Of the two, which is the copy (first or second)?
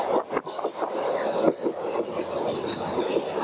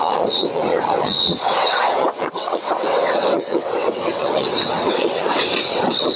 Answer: second